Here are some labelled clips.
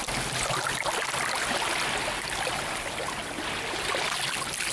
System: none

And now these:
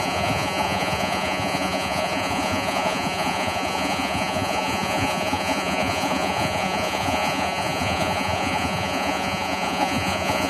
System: vocoder, Vocos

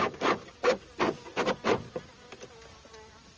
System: none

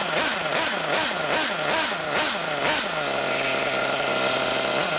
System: none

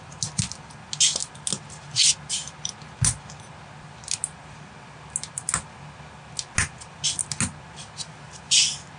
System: none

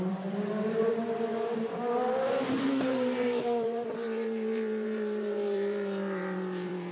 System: vocoder, BigVGAN v2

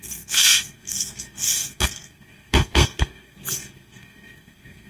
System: codec, SNAC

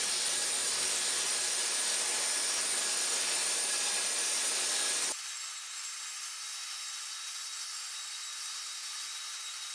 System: none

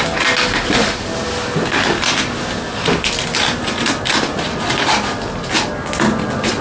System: none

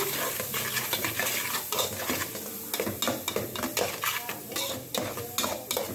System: none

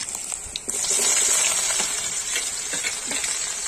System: none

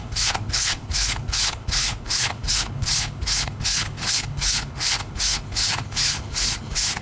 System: codec, HILCodec